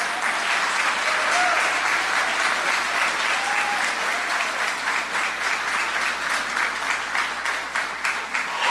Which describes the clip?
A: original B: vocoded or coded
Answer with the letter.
A